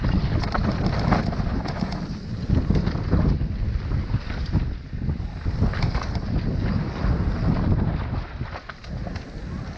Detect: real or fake real